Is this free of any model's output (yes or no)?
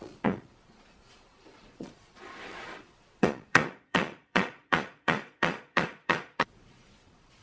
no